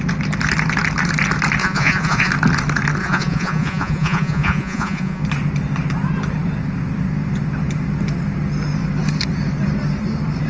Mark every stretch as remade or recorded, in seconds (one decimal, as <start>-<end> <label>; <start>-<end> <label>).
0.0-1.6 recorded; 1.6-2.3 remade; 2.3-3.0 recorded; 3.0-5.2 remade; 5.2-10.5 recorded